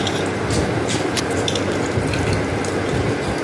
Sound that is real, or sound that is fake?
real